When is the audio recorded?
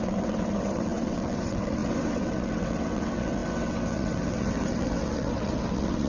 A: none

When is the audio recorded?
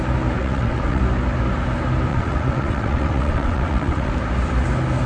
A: 0.0-0.4; 1.0-2.1; 4.1-5.1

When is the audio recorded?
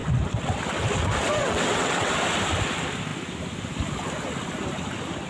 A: 0.0-1.3; 2.1-5.3